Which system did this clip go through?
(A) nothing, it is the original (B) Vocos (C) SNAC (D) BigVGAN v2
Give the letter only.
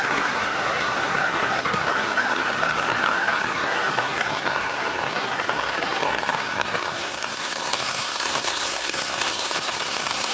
C